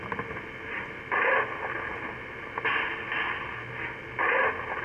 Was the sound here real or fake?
real